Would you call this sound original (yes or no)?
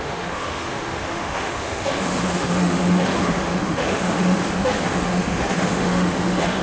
no